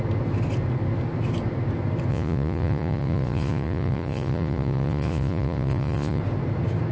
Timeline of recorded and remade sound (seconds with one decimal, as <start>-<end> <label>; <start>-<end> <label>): 0.0-2.1 recorded; 2.1-6.2 remade; 6.2-6.9 recorded